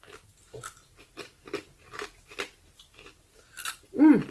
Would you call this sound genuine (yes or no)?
yes